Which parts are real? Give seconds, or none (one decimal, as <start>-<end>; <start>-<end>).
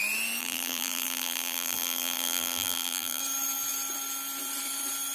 0.0-0.4; 3.2-5.1